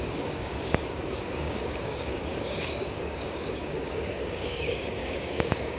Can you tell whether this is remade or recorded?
remade